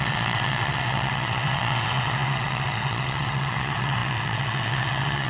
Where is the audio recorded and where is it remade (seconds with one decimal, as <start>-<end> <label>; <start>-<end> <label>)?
0.0-5.3 remade